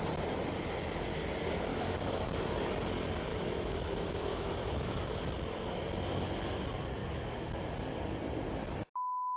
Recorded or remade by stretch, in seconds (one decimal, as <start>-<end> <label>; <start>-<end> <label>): 0.0-1.7 recorded; 1.7-2.7 remade; 2.7-3.3 recorded; 3.3-5.4 remade; 5.4-7.0 recorded; 7.0-7.7 remade; 7.7-9.4 recorded